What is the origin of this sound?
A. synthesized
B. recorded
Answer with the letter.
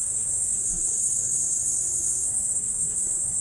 A